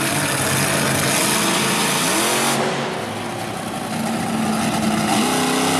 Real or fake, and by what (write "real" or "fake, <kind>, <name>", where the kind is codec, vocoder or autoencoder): real